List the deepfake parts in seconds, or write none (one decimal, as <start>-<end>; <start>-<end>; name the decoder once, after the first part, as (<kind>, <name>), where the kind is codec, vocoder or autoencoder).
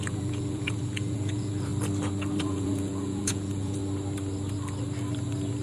0.0-1.7 (vocoder, Vocos); 2.4-3.8